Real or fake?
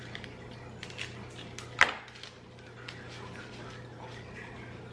real